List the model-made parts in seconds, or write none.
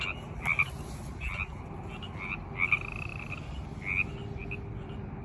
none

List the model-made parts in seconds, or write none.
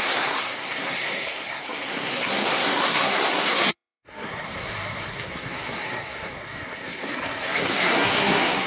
0.0-8.7 (codec, SNAC)